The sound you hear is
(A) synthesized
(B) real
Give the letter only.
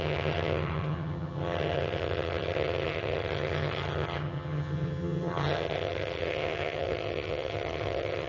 A